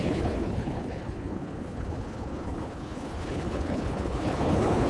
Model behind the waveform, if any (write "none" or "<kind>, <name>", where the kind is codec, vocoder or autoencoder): codec, HILCodec